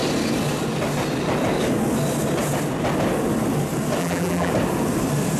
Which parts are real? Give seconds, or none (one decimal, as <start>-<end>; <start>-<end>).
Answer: 0.0-4.0; 4.5-5.4

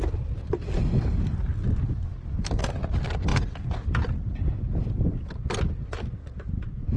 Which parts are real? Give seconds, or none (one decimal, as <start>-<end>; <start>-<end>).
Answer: 0.0-7.0

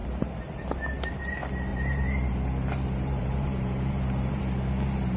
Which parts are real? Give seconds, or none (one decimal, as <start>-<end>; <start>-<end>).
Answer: 0.0-1.7; 4.4-5.2